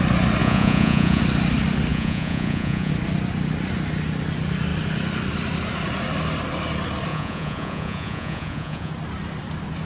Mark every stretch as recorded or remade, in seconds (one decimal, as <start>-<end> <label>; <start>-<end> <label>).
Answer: 0.0-0.4 recorded; 0.4-1.2 remade; 1.2-1.9 recorded; 1.9-2.9 remade; 2.9-7.1 recorded; 7.1-8.9 remade; 8.9-9.9 recorded